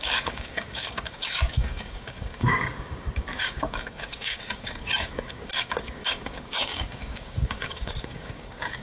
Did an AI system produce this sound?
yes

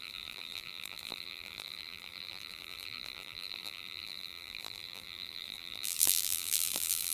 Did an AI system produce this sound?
yes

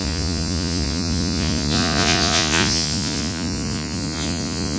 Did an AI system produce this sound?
yes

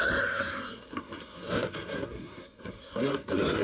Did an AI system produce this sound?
yes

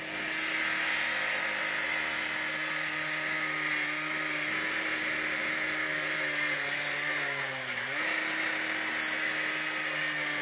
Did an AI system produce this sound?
no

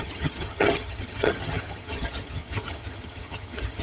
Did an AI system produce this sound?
yes